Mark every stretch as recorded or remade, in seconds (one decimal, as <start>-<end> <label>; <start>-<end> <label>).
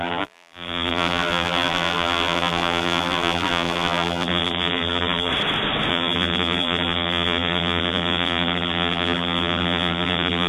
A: 0.0-5.3 remade; 5.3-5.9 recorded; 5.9-10.5 remade